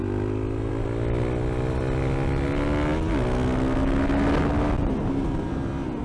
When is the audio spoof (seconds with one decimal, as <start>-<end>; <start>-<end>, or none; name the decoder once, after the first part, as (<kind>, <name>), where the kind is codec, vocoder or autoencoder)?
none